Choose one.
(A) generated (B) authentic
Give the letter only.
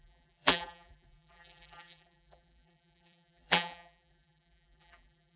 A